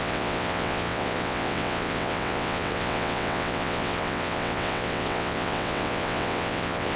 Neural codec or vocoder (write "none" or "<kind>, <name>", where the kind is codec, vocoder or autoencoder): vocoder, WaveNeXt